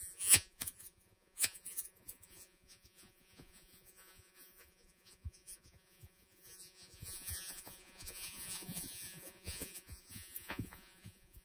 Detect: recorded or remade remade